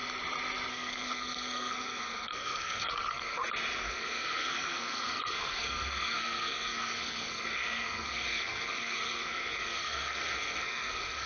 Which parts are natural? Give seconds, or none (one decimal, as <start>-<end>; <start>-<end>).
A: 0.0-0.7; 3.4-3.9